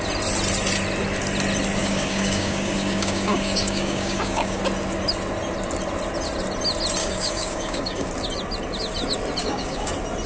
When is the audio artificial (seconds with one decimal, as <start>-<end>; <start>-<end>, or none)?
1.8-4.6; 7.0-8.1; 9.4-9.9